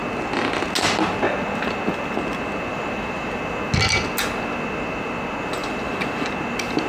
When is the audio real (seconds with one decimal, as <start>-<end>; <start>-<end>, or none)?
0.0-2.7; 3.4-5.6; 6.3-6.9